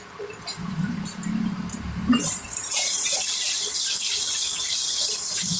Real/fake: fake